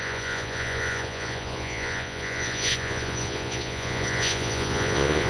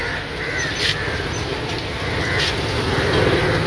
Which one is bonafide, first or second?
second